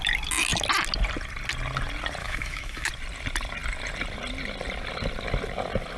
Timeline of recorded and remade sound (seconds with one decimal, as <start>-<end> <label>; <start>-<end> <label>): 0.0-2.2 recorded; 2.2-2.9 remade; 2.9-6.0 recorded